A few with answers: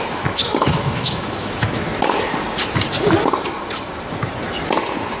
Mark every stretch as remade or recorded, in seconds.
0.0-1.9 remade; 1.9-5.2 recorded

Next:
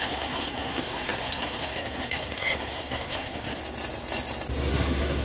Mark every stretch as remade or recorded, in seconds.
0.0-3.6 remade; 3.6-4.7 recorded; 4.7-5.2 remade

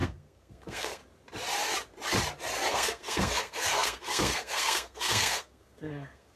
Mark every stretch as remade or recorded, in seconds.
0.0-1.0 remade; 1.0-2.7 recorded; 2.7-6.4 remade

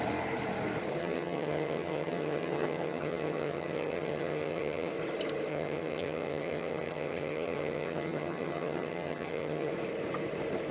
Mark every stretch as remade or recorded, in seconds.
0.0-1.0 recorded; 1.0-4.9 remade; 4.9-5.5 recorded; 5.5-9.7 remade; 9.7-10.7 recorded

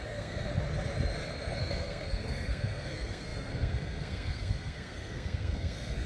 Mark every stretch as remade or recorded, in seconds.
0.0-0.5 remade; 0.5-1.6 recorded; 1.6-6.1 remade

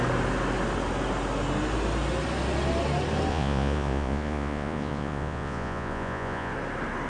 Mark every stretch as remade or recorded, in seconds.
0.0-3.3 recorded; 3.3-6.5 remade; 6.5-7.1 recorded